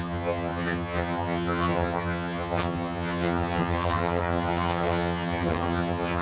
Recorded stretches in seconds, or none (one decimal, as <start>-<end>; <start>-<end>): none